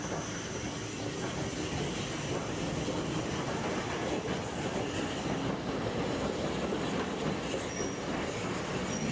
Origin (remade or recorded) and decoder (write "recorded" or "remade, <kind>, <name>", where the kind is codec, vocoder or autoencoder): recorded